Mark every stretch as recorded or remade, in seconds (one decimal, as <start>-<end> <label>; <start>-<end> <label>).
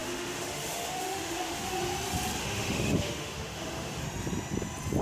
0.0-1.8 remade; 1.8-2.4 recorded; 2.4-4.0 remade; 4.0-5.0 recorded